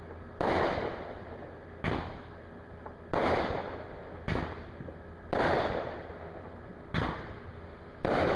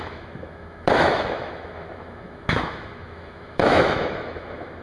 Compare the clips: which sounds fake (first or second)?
second